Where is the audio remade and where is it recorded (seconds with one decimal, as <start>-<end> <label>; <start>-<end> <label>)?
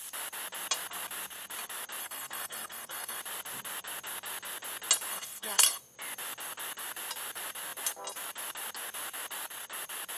0.0-2.0 recorded; 2.0-3.2 remade; 3.2-5.1 recorded; 5.1-5.8 remade; 5.8-10.2 recorded